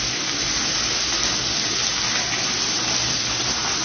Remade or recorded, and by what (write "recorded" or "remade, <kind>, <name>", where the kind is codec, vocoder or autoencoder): recorded